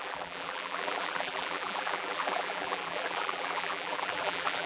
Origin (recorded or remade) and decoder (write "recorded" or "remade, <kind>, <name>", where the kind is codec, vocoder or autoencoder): remade, vocoder, BigVGAN v2